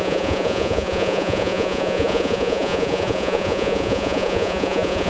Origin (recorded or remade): remade